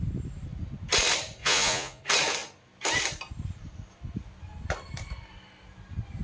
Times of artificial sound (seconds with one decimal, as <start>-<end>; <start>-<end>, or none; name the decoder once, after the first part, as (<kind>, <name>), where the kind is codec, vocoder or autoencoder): 1.4-2.0 (vocoder, Vocos)